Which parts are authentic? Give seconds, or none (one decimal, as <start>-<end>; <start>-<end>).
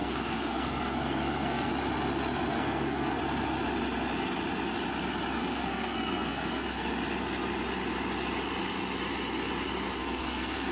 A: 1.7-2.5; 3.2-5.3; 6.9-10.0